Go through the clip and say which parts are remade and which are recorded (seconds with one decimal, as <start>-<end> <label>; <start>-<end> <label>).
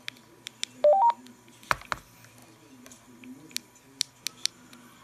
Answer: 0.0-5.0 recorded